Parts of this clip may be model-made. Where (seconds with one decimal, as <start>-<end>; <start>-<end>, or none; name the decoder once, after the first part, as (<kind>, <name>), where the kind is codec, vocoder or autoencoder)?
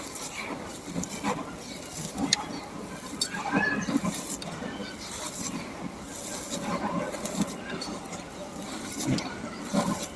0.0-10.2 (vocoder, BigVGAN v2)